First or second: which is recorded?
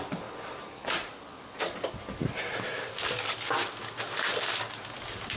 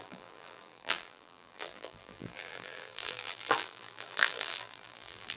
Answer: first